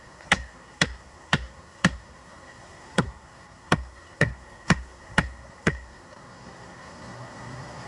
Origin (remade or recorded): remade